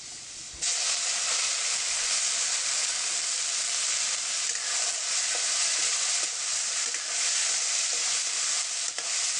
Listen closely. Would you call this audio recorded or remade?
recorded